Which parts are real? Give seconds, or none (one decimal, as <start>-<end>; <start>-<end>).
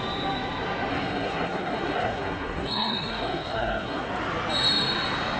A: 0.0-0.9; 4.1-5.4